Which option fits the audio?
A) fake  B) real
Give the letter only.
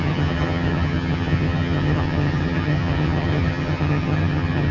A